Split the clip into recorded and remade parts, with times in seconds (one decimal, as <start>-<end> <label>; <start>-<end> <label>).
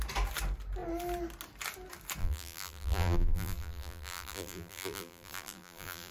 0.0-2.2 recorded; 2.2-6.1 remade